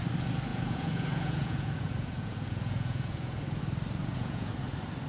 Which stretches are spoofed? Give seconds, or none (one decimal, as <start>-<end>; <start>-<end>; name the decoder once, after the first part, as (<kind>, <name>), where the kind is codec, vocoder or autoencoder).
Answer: 0.5-3.6 (vocoder, Vocos); 4.0-4.5